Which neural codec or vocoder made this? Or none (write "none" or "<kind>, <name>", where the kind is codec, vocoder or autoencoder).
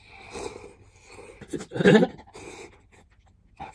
none